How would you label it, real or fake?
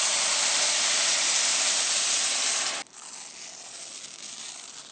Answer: real